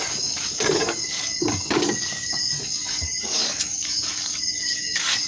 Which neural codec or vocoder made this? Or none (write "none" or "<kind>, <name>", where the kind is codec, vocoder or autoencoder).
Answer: codec, DAC